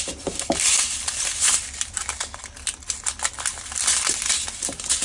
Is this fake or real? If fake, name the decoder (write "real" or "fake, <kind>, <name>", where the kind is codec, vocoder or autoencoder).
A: real